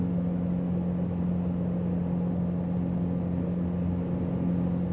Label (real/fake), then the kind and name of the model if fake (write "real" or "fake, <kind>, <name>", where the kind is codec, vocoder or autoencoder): real